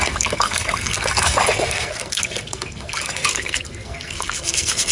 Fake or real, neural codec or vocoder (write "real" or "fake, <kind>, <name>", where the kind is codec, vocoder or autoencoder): fake, codec, SNAC